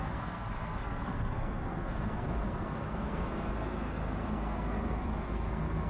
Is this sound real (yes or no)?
no